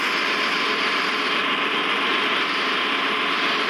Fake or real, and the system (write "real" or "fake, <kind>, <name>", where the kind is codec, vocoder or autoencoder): fake, vocoder, BigVGAN v2